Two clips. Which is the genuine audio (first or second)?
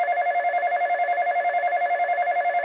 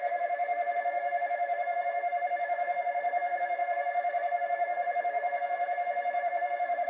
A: first